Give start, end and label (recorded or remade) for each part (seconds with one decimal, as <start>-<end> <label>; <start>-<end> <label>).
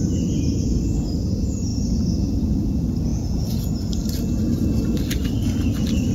0.0-3.1 recorded; 3.1-3.7 remade; 3.7-6.1 recorded